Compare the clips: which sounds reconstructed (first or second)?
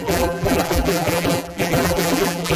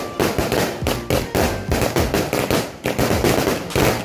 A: first